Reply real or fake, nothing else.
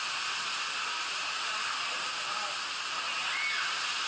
real